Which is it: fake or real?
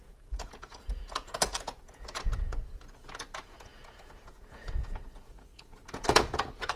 fake